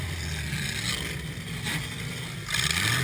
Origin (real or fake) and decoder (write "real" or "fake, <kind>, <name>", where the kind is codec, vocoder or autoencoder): real